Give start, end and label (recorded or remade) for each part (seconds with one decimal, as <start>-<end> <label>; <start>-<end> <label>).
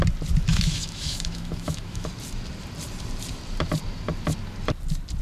0.0-0.5 recorded; 0.5-2.1 remade; 2.1-5.2 recorded